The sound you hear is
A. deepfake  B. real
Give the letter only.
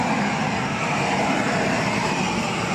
A